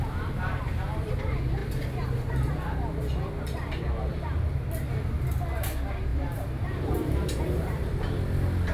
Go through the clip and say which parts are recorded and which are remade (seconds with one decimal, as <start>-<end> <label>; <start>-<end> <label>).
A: 0.0-6.1 recorded; 6.1-8.0 remade; 8.0-8.7 recorded